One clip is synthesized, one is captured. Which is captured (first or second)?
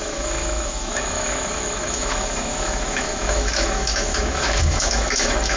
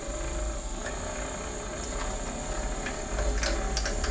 second